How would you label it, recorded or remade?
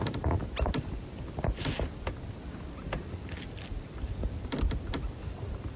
recorded